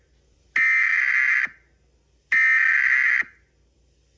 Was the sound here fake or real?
real